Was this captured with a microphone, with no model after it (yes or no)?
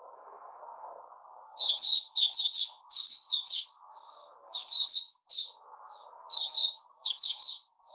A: no